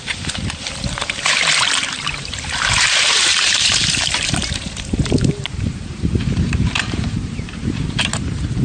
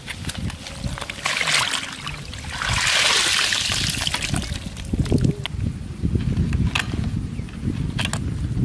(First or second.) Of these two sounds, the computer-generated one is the first